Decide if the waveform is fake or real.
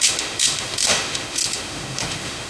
fake